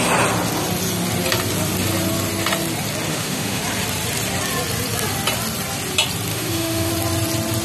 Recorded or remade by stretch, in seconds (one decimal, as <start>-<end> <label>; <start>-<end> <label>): 0.0-3.1 recorded; 3.1-3.6 remade; 3.6-6.3 recorded; 6.3-6.9 remade; 6.9-7.6 recorded